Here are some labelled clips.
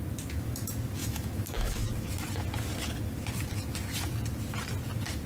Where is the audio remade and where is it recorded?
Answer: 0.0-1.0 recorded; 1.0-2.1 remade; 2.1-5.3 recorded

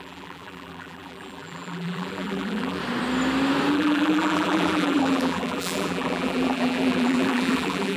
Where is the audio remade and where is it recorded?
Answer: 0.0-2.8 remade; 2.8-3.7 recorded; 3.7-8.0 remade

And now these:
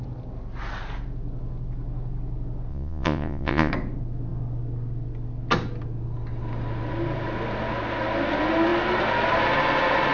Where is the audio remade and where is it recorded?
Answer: 0.0-2.7 recorded; 2.7-3.7 remade; 3.7-10.1 recorded

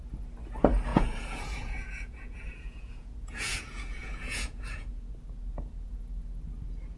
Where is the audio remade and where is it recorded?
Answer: 0.0-0.9 recorded; 0.9-5.1 remade; 5.1-7.0 recorded

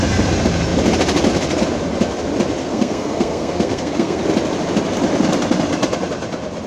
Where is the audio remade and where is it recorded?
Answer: 0.0-2.6 recorded; 2.6-4.2 remade; 4.2-6.7 recorded

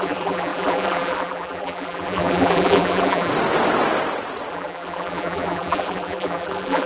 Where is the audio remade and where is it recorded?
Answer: 0.0-3.3 remade; 3.3-4.5 recorded; 4.5-6.9 remade